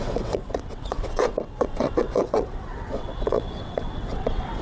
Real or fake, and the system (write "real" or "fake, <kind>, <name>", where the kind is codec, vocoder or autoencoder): fake, vocoder, WaveNeXt